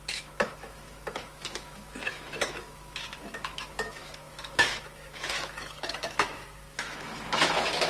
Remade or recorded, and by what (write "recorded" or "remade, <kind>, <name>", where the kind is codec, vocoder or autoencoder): remade, autoencoder, DAC-VAE